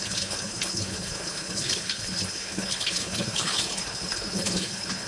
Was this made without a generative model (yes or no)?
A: no